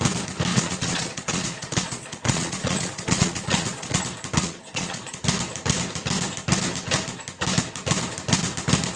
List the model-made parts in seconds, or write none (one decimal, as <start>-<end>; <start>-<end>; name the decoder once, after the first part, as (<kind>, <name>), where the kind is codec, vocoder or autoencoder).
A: 0.5-4.0 (vocoder, Vocos); 4.4-5.2